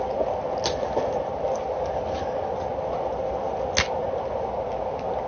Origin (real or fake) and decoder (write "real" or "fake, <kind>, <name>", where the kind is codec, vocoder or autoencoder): real